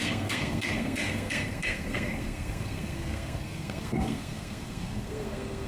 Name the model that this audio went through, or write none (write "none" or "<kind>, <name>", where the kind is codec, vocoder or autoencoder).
codec, SNAC